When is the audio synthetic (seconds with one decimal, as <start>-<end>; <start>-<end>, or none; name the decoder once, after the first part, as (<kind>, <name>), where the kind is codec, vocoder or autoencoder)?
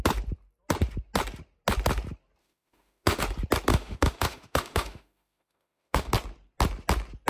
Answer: 2.4-3.2 (autoencoder, DAC-VAE); 3.7-6.1